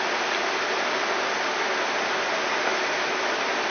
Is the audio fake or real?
real